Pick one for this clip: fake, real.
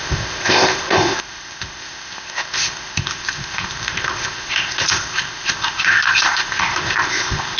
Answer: fake